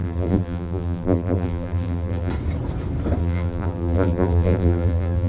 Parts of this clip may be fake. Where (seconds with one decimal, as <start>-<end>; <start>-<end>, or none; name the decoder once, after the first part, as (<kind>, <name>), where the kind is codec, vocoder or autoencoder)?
0.0-2.3 (vocoder, BigVGAN v2); 3.2-5.3